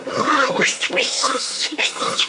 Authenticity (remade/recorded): remade